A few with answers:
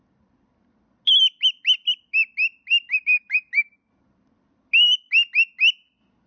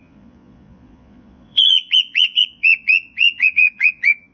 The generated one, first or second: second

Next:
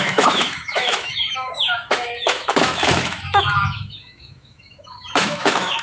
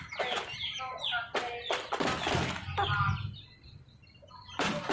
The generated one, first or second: first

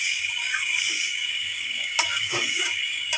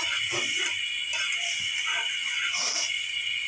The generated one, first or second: first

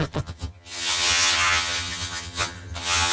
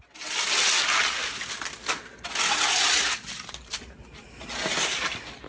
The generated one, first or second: first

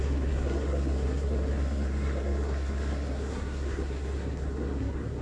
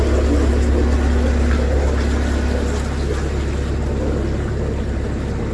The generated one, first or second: first